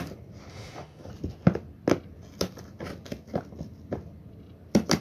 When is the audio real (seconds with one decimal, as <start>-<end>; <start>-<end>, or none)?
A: 0.0-0.5; 1.1-5.0